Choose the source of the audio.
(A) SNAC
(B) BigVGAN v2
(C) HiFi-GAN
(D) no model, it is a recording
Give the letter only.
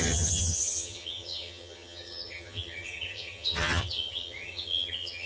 C